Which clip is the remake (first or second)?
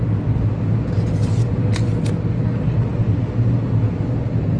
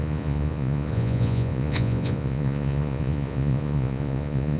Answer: second